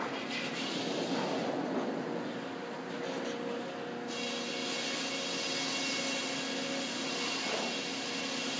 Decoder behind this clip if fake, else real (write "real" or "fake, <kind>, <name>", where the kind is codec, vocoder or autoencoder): real